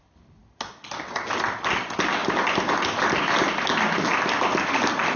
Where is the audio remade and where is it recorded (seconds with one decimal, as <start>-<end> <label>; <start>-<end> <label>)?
0.0-5.2 recorded